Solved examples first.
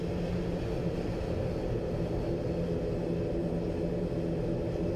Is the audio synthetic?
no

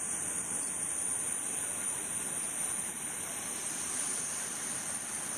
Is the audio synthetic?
no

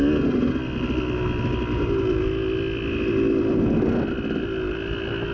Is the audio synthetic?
no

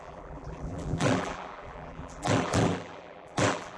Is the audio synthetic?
yes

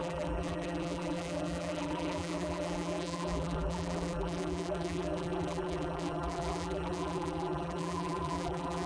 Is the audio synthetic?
yes